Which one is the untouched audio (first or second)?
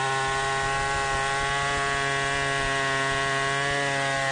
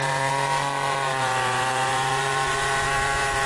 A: first